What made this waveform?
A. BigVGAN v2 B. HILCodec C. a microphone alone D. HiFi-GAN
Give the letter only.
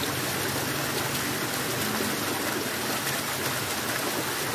C